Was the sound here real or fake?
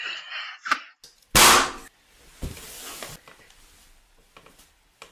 real